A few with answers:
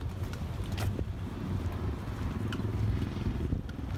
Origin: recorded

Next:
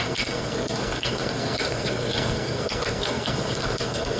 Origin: remade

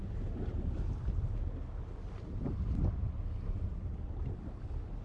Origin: recorded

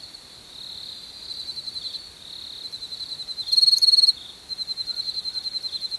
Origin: recorded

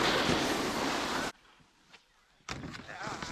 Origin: recorded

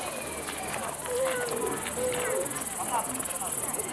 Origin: recorded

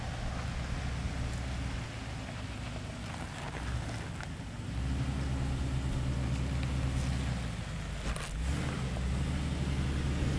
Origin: recorded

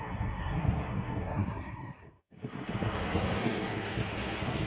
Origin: remade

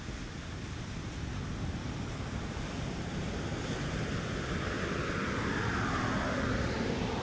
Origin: recorded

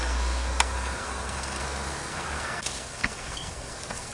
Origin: remade